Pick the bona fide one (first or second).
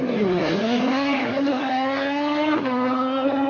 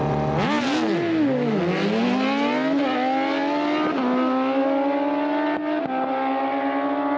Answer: second